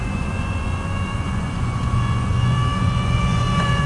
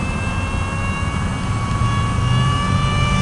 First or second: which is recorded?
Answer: second